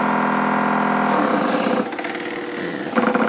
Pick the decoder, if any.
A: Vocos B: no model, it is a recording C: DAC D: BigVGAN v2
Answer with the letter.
B